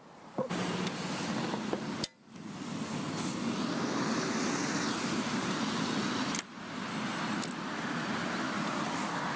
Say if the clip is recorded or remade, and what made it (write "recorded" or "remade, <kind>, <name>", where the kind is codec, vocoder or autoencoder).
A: recorded